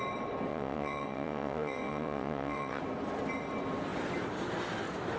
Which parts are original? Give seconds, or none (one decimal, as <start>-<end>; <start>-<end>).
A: 0.0-0.5; 2.8-5.2

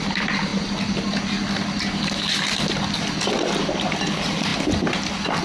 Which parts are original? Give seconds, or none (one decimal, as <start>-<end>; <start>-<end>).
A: 0.0-5.4

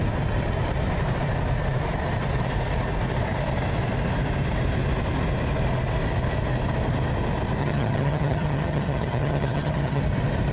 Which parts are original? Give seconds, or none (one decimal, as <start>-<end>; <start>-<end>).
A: 0.0-7.6; 10.0-10.5

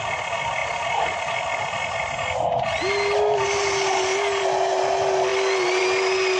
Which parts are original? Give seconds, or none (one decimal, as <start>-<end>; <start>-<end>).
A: 0.0-6.4

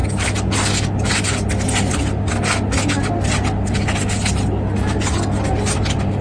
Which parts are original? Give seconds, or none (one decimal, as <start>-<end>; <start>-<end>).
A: 0.0-6.2

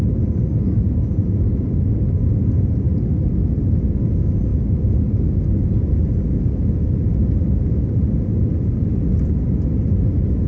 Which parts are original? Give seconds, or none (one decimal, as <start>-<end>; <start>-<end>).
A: 0.0-10.5

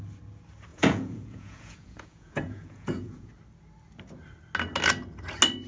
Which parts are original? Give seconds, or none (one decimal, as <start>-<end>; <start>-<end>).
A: 0.0-0.7; 3.3-5.7